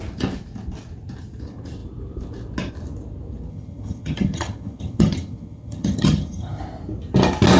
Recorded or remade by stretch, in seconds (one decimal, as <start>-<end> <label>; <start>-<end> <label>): 0.0-3.5 recorded; 3.5-6.6 remade; 6.6-7.6 recorded